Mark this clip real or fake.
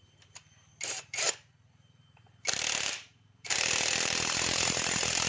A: fake